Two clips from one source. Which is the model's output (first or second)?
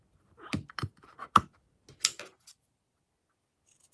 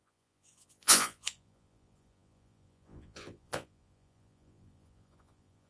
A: second